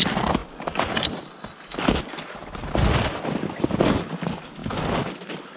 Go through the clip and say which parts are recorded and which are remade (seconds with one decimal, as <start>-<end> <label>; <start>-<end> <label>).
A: 0.0-5.6 recorded